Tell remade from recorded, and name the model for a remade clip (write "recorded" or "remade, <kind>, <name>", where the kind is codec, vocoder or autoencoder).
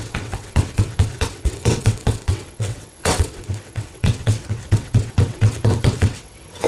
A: remade, vocoder, WaveNeXt